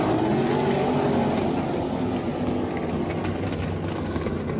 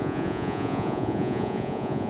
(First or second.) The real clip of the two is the first